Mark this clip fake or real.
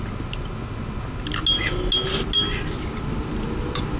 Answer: real